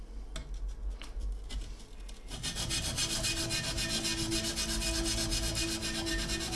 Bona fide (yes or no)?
yes